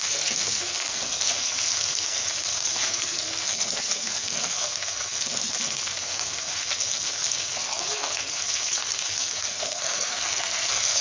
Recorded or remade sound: remade